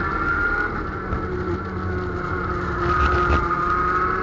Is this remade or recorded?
recorded